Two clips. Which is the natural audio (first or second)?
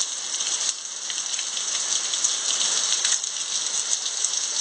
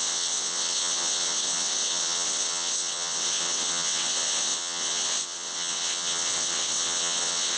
first